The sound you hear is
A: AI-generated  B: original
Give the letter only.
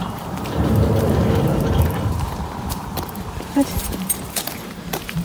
A